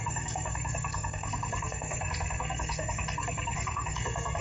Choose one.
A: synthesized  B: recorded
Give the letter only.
A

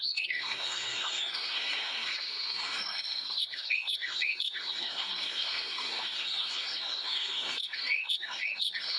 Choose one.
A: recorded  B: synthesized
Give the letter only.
B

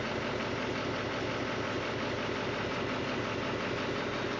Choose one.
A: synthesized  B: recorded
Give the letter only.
B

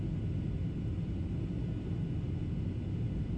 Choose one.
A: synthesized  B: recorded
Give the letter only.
B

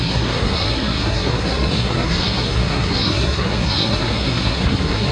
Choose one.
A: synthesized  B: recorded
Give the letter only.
A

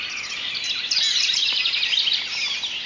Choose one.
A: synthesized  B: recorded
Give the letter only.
B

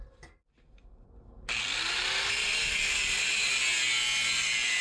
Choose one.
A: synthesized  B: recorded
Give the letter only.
B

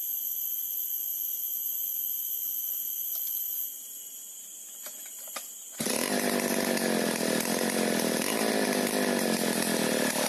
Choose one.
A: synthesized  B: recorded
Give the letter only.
B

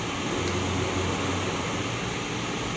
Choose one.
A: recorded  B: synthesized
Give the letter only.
A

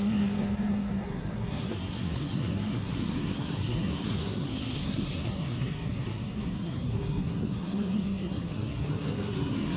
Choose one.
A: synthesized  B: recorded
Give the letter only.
A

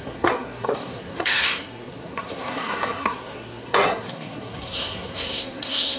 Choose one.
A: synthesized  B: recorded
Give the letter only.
A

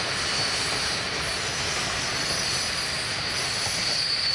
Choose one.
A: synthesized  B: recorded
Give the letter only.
B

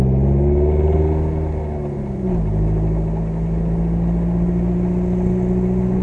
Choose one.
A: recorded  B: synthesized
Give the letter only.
A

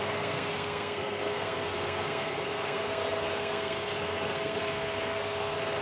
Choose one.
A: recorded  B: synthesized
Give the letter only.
B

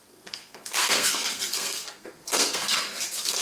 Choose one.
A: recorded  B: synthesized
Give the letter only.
B